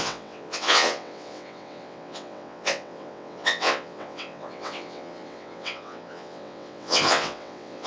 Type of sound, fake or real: fake